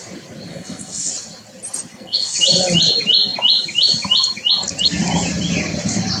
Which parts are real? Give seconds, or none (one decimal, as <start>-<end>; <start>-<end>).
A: 0.0-0.5; 1.1-1.9; 2.4-6.2